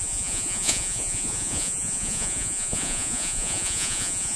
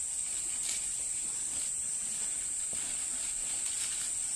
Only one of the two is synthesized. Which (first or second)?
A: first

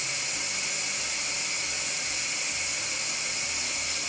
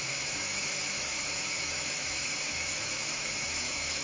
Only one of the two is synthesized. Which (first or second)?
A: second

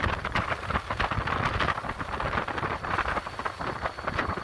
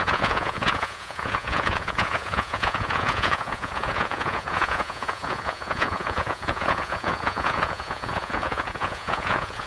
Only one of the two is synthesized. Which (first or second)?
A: second